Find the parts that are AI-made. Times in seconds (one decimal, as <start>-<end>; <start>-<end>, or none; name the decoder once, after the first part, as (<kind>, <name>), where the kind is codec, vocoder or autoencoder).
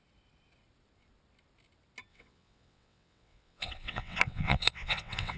2.1-5.4 (vocoder, WaveNeXt)